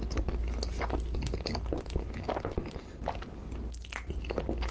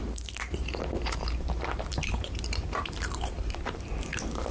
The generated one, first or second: second